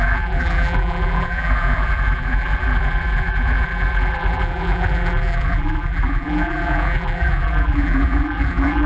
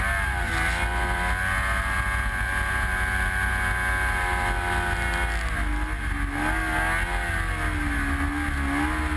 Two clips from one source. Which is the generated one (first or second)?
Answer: first